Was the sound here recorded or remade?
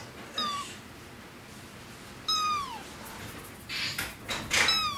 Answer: recorded